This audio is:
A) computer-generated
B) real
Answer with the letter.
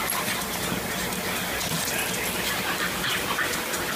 B